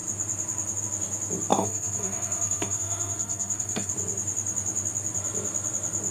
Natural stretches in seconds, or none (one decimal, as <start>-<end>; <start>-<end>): 0.0-1.5; 3.9-6.1